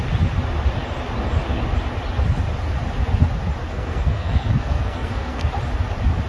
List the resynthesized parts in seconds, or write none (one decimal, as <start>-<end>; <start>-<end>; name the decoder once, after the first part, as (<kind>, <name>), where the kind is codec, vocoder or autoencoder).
3.7-5.5 (codec, SNAC)